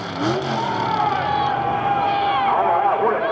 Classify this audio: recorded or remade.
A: recorded